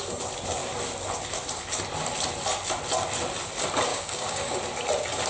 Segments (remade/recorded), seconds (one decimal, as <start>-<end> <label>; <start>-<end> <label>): 0.0-3.9 recorded; 3.9-4.6 remade; 4.6-5.3 recorded